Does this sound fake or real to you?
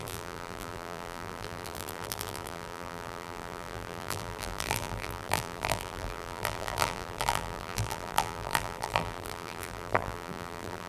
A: fake